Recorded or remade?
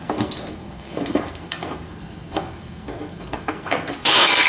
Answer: remade